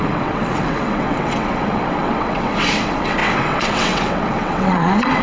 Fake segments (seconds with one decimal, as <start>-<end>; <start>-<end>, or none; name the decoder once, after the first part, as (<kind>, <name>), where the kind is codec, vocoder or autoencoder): 0.0-5.2 (vocoder, WaveNeXt)